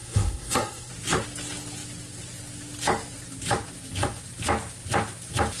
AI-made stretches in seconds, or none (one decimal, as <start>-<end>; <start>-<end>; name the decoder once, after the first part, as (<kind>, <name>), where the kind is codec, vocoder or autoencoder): 0.0-0.9 (codec, SNAC)